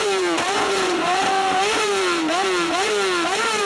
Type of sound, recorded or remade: remade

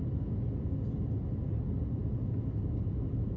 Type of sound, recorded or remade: recorded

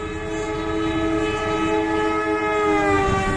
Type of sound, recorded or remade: recorded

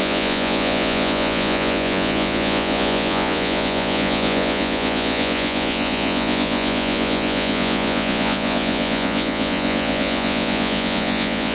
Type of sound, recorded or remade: remade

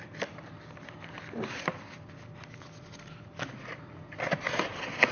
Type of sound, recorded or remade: recorded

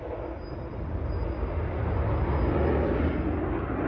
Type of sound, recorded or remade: recorded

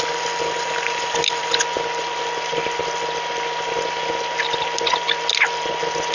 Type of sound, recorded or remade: recorded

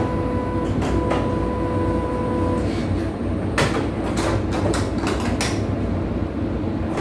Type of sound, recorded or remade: recorded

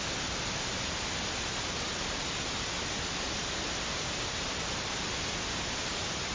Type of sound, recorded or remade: recorded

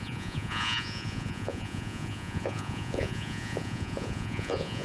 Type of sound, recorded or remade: remade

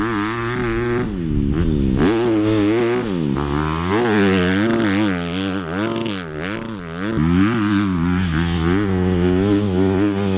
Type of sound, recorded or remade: recorded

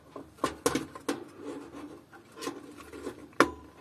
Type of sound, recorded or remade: recorded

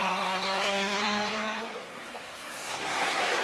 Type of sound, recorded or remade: remade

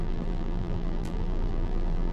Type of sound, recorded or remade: remade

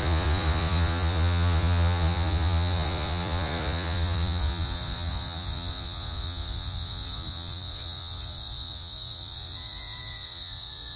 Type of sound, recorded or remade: remade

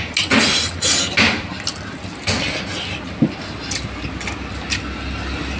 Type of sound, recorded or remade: recorded